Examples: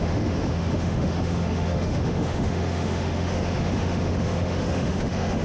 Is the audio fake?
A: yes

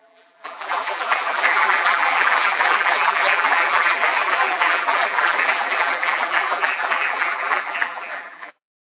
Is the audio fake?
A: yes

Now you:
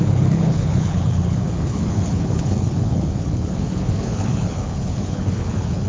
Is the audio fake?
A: yes